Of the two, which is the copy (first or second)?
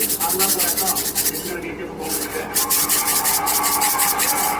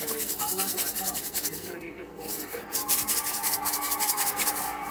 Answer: second